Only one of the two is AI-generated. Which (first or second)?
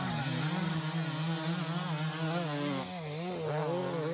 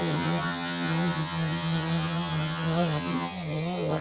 second